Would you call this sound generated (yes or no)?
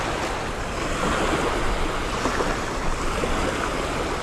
no